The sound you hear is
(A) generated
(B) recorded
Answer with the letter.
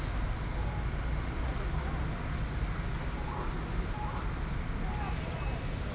B